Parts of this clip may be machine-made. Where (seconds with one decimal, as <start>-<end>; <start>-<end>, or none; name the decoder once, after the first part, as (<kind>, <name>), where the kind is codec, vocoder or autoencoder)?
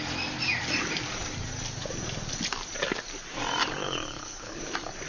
3.8-4.6 (codec, HILCodec)